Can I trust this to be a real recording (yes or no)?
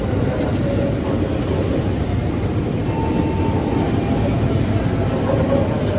yes